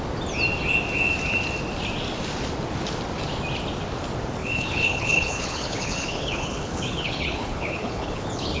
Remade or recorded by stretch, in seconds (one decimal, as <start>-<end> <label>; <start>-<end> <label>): 0.0-4.4 recorded; 4.4-8.6 remade